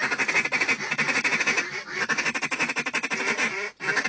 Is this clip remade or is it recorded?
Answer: recorded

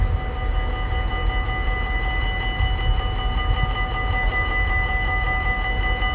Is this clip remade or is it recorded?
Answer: recorded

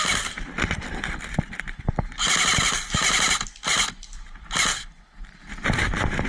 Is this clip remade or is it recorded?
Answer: recorded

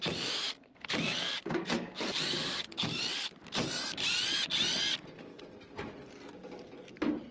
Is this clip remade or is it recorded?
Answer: recorded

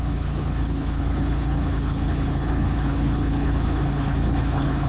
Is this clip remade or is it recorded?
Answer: remade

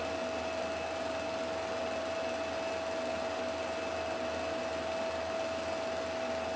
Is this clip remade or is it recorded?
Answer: recorded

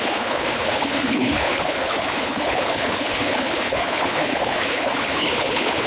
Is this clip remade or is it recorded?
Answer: remade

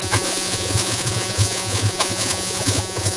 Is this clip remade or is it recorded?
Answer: remade